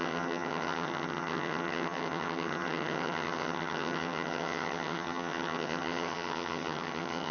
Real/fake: fake